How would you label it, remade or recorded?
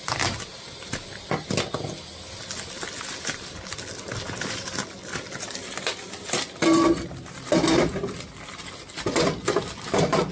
recorded